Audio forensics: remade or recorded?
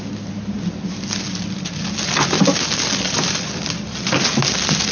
recorded